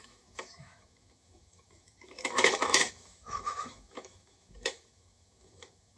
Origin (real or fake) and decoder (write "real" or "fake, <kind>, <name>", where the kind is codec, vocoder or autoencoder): fake, autoencoder, DAC-VAE